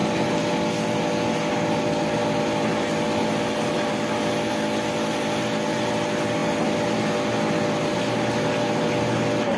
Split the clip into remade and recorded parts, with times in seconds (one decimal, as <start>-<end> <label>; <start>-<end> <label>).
0.0-9.6 recorded